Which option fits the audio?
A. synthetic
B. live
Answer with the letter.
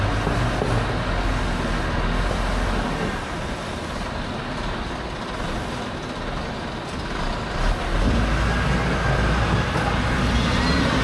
B